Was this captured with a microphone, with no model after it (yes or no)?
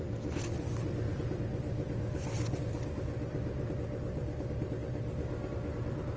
yes